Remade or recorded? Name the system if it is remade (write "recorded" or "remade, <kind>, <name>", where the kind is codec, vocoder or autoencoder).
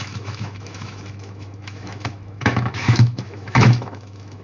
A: remade, autoencoder, DAC-VAE